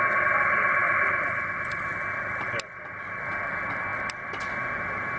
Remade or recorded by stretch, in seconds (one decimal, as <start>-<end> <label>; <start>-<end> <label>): 0.0-5.2 recorded